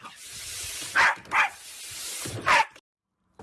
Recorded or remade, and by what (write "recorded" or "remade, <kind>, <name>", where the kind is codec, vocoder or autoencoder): recorded